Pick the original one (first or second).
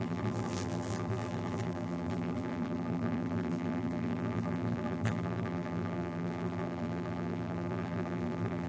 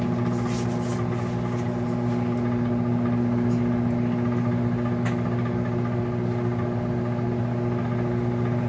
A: second